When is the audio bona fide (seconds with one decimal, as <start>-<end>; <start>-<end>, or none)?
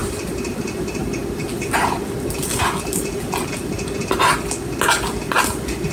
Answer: 0.6-5.9